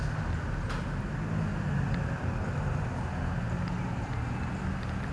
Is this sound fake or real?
real